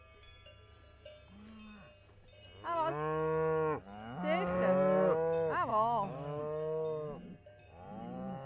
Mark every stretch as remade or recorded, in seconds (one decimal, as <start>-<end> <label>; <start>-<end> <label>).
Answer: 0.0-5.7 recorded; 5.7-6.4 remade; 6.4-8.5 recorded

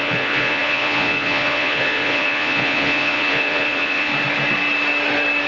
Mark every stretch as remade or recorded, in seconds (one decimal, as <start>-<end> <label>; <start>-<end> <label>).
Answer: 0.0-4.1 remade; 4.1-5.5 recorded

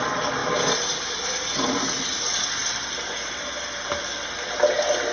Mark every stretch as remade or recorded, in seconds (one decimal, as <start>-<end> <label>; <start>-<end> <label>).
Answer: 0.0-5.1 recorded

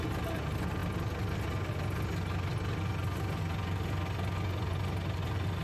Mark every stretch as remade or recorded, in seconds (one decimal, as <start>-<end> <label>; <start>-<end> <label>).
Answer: 0.0-5.6 recorded

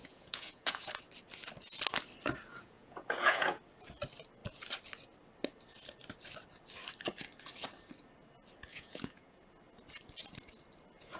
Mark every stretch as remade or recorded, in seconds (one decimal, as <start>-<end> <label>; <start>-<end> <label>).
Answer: 0.0-0.9 remade; 0.9-2.5 recorded; 2.5-3.6 remade; 3.6-8.7 recorded; 8.7-9.4 remade; 9.4-11.2 recorded